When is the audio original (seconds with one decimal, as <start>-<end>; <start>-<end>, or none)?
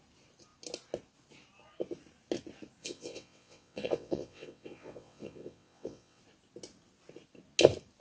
0.0-2.8; 6.2-8.0